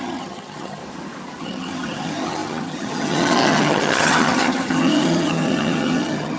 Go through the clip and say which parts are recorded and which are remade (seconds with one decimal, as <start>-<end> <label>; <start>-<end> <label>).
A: 0.0-0.8 remade; 0.8-1.4 recorded; 1.4-6.4 remade